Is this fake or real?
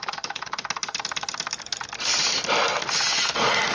real